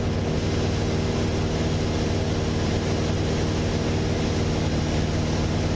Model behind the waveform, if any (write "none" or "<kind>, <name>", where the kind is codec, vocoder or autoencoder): none